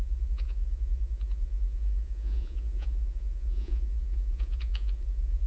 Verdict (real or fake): fake